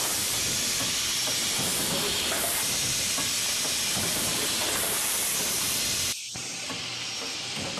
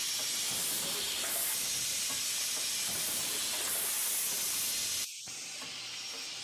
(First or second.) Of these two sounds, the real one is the second